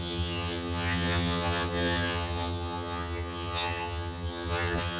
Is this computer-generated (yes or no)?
yes